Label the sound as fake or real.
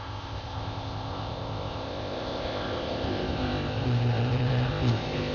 fake